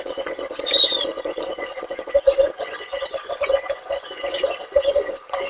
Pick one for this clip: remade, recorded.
remade